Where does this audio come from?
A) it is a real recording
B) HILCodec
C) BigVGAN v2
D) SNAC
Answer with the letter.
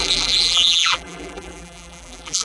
C